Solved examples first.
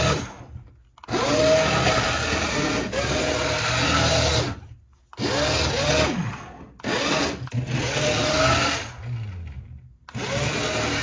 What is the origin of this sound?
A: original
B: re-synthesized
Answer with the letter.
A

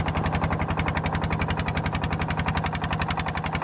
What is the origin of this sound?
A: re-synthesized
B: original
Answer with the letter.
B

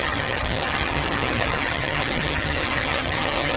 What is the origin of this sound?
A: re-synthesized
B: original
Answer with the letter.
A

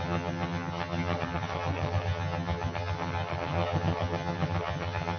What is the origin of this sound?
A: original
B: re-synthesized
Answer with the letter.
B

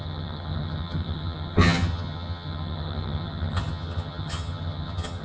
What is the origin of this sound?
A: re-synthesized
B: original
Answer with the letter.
A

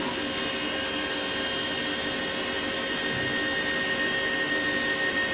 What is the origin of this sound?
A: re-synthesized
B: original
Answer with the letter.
B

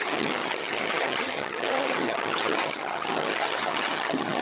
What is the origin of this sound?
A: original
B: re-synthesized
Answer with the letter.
B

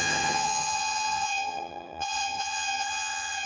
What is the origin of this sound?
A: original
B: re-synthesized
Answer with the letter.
B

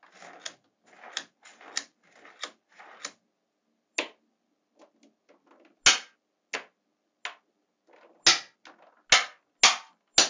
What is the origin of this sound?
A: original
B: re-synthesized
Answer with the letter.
A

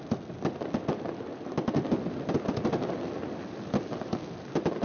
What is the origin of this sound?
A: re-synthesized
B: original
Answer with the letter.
B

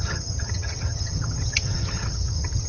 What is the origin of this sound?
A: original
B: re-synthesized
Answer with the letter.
B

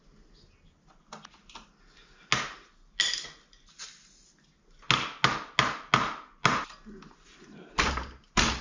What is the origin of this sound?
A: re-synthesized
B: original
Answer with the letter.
B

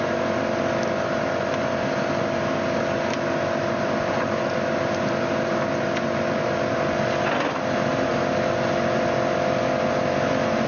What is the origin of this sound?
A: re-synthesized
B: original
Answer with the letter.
B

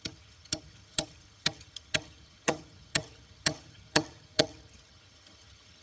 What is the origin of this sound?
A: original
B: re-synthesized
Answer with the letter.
B